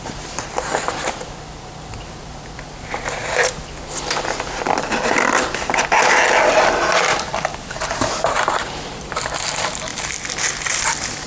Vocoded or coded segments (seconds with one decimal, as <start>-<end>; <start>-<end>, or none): 0.0-3.2; 6.9-11.3